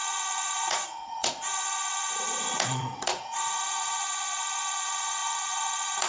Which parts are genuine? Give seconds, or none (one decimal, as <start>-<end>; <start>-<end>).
none

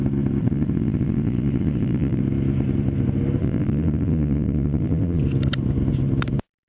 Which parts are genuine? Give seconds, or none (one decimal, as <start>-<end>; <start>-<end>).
0.0-0.4; 2.2-3.4; 5.2-6.7

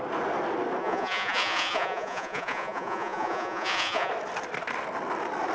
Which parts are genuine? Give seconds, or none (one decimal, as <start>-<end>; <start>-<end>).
0.0-0.8; 4.1-5.5

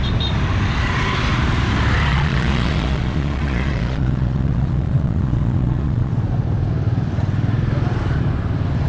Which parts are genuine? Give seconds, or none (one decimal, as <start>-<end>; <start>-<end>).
0.0-2.1; 6.1-8.9

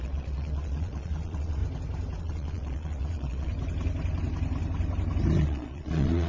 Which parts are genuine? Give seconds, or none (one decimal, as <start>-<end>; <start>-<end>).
1.6-2.2; 3.5-5.4

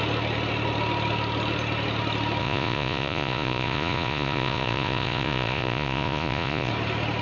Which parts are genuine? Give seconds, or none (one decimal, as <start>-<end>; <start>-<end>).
0.0-2.4; 6.7-7.2

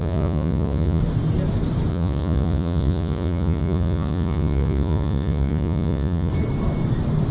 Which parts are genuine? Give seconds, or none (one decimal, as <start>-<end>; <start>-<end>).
1.0-1.9; 6.3-7.3